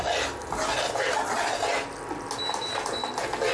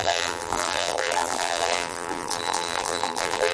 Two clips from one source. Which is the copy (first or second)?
second